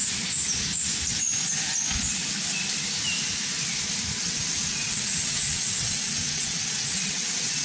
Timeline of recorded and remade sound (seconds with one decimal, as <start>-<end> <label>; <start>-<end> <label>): 0.0-4.2 recorded; 4.2-7.6 remade